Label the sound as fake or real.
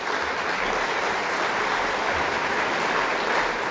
real